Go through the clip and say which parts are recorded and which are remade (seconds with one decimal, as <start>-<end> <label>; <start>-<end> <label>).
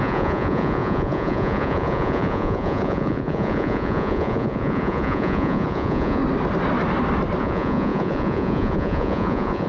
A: 0.0-6.2 remade; 6.2-7.4 recorded; 7.4-9.7 remade